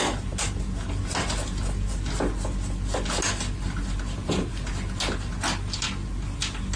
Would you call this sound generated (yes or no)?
no